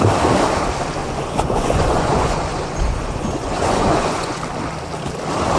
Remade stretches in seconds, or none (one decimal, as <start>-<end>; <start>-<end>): 1.0-4.4